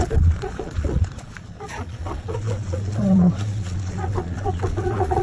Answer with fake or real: fake